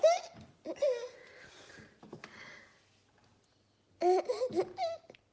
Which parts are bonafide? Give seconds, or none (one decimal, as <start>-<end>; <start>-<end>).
0.0-5.3